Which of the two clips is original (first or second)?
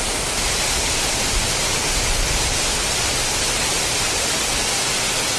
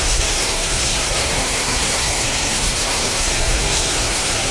first